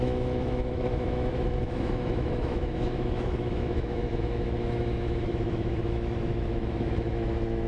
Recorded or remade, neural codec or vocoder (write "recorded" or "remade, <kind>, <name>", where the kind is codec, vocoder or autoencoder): remade, autoencoder, DAC-VAE